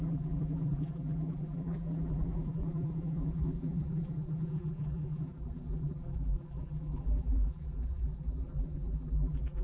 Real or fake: fake